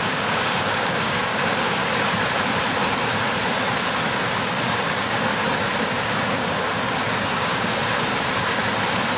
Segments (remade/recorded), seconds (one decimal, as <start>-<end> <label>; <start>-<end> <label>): 0.0-1.8 remade; 1.8-4.1 recorded; 4.1-5.3 remade; 5.3-5.8 recorded; 5.8-7.8 remade; 7.8-9.2 recorded